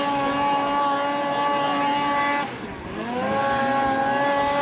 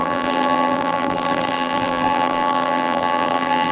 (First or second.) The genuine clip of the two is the first